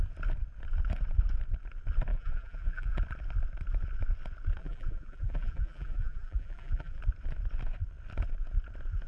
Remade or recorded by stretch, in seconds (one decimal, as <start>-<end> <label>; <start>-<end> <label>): 0.0-2.1 recorded; 2.1-2.9 remade; 2.9-4.6 recorded; 4.6-7.0 remade; 7.0-9.1 recorded